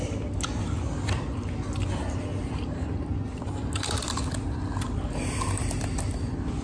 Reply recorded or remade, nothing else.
recorded